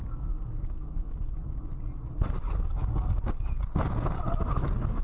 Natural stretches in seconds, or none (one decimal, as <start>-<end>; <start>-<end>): 1.7-2.8; 3.6-5.0